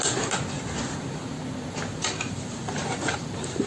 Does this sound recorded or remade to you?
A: recorded